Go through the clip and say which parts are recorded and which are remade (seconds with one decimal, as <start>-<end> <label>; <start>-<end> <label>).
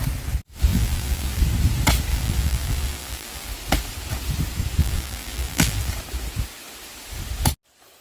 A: 0.0-0.7 recorded; 0.7-1.4 remade; 1.4-2.1 recorded; 2.1-3.5 remade; 3.5-4.8 recorded; 4.8-5.9 remade; 5.9-8.0 recorded